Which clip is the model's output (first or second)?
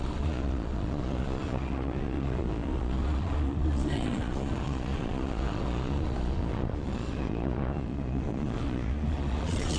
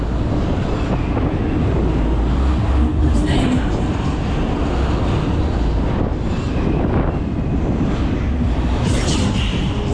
first